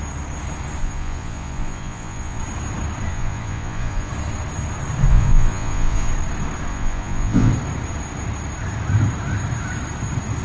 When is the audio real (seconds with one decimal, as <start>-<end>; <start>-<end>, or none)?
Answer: 0.0-0.8; 2.4-3.1; 4.1-5.1; 6.1-6.7; 7.5-10.4